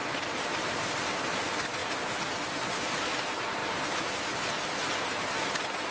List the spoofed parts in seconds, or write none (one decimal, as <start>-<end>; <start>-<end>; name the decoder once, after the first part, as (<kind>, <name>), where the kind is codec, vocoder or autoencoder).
0.0-1.2 (vocoder, BigVGAN v2); 1.8-2.8